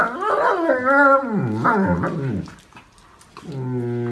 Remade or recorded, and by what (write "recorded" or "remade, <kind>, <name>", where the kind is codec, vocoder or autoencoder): recorded